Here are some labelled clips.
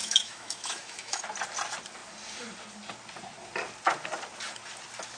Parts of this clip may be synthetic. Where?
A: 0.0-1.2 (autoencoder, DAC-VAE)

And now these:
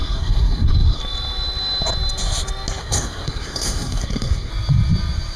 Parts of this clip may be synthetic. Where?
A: 0.0-1.0 (codec, SNAC); 2.8-4.5

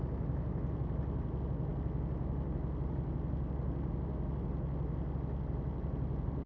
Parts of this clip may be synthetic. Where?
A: none

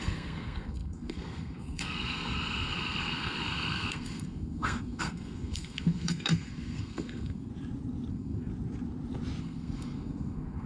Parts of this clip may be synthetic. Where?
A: 0.0-7.5 (codec, SNAC); 8.1-8.5; 9.4-10.7

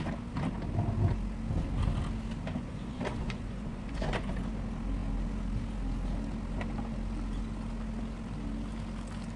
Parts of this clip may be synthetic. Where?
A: 2.5-4.3 (vocoder, Vocos)

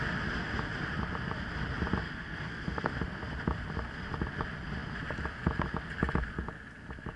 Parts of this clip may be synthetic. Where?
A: 2.0-2.9 (codec, SNAC)

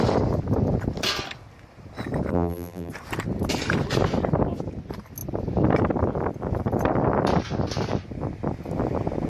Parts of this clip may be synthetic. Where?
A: 2.3-2.9 (vocoder, BigVGAN v2)

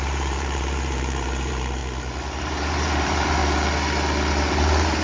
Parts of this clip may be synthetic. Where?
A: 0.0-1.8 (vocoder, BigVGAN v2); 2.4-3.4; 4.3-5.0